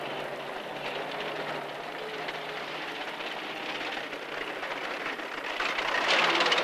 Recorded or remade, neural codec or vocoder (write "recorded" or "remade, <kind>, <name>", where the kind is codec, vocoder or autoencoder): recorded